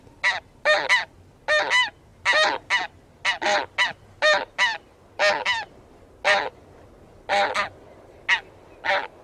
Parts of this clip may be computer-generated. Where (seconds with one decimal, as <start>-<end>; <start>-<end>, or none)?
none